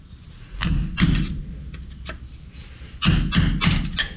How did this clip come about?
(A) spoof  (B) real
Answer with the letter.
B